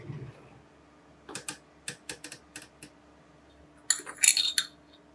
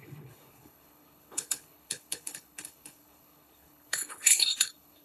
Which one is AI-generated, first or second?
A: second